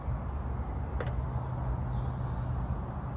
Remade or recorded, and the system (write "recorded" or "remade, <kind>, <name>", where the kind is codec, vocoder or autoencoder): recorded